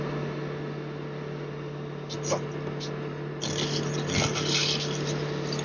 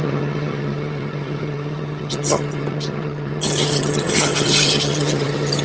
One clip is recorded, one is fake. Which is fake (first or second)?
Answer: second